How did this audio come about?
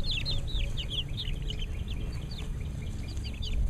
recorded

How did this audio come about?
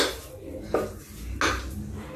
recorded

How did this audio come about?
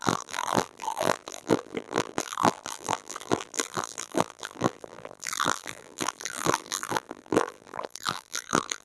remade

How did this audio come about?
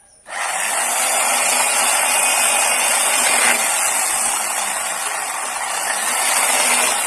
recorded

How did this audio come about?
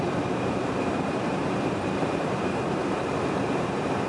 remade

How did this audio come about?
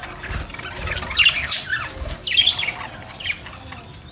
recorded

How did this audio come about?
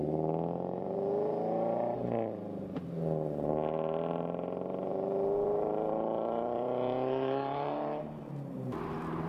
remade